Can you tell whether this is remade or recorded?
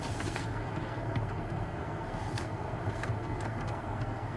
remade